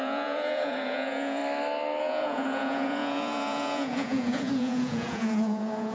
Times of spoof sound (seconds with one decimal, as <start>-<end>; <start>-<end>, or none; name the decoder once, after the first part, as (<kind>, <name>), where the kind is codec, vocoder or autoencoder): 0.0-1.4 (vocoder, Vocos); 2.0-5.9

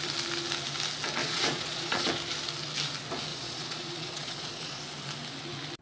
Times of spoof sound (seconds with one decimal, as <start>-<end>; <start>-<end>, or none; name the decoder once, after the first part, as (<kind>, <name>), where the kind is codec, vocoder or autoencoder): 1.2-2.1 (vocoder, Vocos); 3.3-4.8

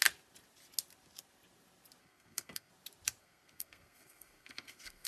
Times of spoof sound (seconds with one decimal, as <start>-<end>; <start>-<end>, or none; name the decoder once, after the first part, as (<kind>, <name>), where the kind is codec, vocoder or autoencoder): 2.0-2.7 (codec, SNAC); 3.2-5.1

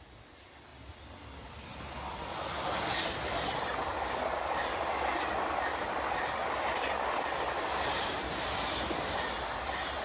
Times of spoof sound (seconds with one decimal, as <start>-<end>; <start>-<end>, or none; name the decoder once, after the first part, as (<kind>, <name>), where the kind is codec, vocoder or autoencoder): none

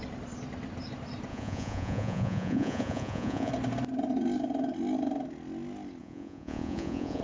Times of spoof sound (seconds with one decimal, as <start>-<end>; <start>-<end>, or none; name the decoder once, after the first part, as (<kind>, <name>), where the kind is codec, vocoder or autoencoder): 1.3-3.5 (vocoder, Vocos); 6.0-7.2

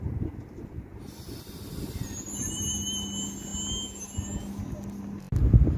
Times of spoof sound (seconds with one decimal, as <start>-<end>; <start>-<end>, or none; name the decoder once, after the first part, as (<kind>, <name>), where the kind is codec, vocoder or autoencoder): none

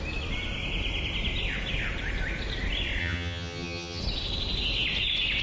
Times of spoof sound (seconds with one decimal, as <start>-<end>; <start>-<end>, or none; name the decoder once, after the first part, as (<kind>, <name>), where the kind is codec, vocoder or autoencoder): 3.0-4.0 (vocoder, HiFi-GAN)